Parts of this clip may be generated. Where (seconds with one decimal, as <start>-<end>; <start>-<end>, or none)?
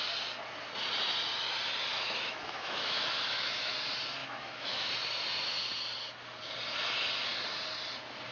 1.9-3.7; 4.2-4.9